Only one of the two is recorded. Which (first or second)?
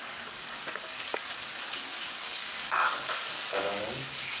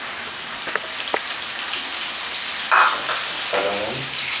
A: second